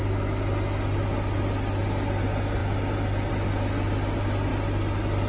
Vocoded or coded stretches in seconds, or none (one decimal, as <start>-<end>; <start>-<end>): none